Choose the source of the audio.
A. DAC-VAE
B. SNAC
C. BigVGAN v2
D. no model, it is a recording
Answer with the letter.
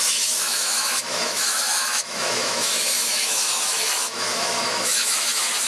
A